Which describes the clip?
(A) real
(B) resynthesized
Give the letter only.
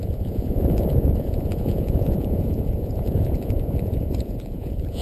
B